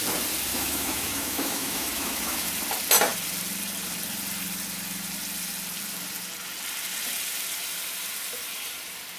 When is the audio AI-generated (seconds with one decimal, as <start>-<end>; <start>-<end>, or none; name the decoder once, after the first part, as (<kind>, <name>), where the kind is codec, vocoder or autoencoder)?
0.5-2.5 (autoencoder, DAC-VAE)